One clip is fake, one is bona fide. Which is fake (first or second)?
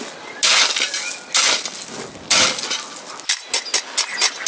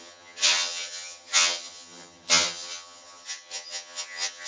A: second